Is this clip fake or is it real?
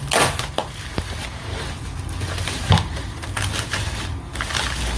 real